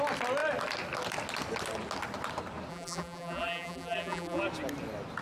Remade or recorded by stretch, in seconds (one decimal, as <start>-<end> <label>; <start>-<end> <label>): 0.0-2.7 recorded; 2.7-4.4 remade; 4.4-5.2 recorded